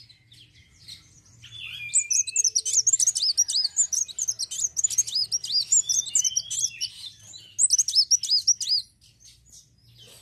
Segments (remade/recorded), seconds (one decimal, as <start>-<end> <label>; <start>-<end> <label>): 0.0-10.2 recorded